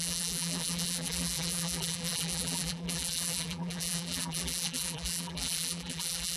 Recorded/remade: remade